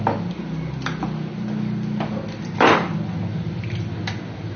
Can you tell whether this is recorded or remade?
recorded